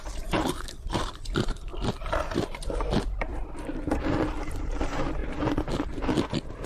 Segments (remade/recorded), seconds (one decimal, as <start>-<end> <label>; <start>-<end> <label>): 0.0-1.7 remade; 1.7-2.2 recorded; 2.2-3.3 remade; 3.3-4.6 recorded; 4.6-5.2 remade; 5.2-6.7 recorded